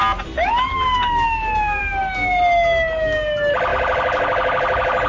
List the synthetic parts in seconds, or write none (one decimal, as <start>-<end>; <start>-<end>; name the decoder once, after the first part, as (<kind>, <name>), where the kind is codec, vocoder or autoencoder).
0.7-1.8 (codec, DAC)